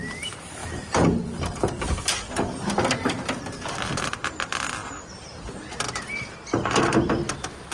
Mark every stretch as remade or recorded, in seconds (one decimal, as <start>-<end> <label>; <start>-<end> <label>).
0.0-7.7 recorded